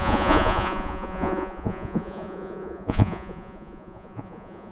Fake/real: fake